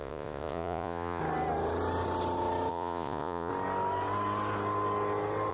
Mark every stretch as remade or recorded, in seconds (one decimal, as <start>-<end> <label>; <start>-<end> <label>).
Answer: 0.0-1.2 remade; 1.2-2.7 recorded; 2.7-3.5 remade; 3.5-5.5 recorded